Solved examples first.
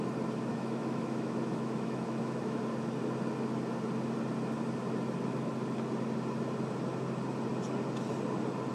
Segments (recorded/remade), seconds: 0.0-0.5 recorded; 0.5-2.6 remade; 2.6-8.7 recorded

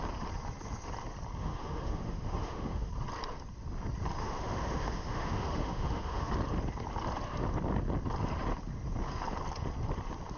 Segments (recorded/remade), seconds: 0.0-1.4 recorded; 1.4-2.9 remade; 2.9-4.2 recorded; 4.2-6.3 remade; 6.3-10.4 recorded